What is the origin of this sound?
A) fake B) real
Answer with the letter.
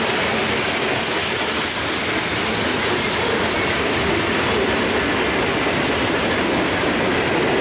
B